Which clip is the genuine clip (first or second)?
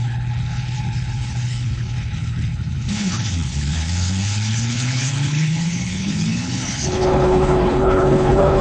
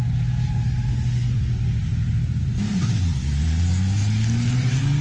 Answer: second